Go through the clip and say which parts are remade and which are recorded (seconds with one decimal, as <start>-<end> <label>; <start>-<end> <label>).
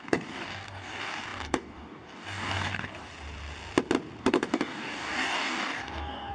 0.0-3.1 remade; 3.1-4.2 recorded; 4.2-6.3 remade